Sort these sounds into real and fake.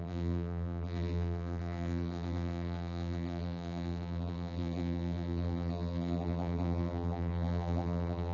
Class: fake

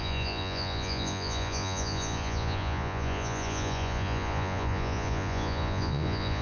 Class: fake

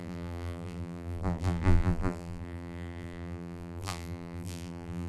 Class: fake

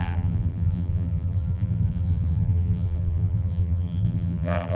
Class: fake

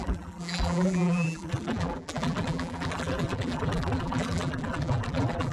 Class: fake